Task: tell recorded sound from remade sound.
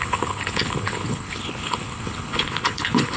remade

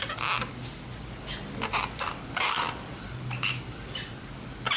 recorded